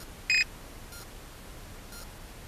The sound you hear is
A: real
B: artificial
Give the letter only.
A